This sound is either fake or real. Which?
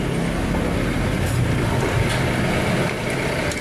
real